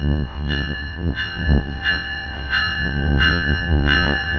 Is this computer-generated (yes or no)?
yes